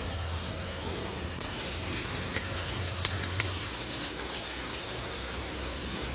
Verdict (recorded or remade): remade